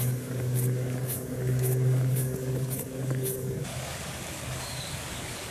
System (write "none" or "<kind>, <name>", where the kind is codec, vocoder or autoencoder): codec, DAC